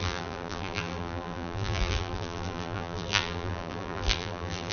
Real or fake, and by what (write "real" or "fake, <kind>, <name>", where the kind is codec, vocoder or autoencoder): fake, vocoder, BigVGAN v2